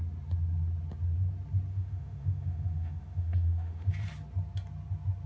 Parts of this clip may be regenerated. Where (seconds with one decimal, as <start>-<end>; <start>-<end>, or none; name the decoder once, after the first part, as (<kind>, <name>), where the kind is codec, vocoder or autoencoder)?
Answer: 1.7-3.9 (autoencoder, DAC-VAE)